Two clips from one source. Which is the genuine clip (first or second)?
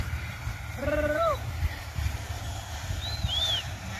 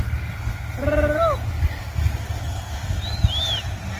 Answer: second